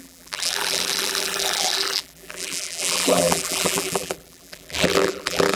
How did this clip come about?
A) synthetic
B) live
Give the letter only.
A